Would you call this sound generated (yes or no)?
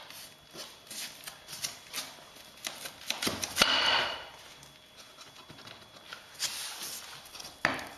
no